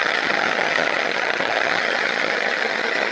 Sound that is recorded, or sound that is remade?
remade